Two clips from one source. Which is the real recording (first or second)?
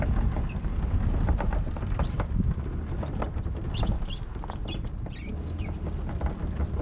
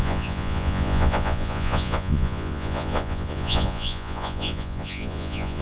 first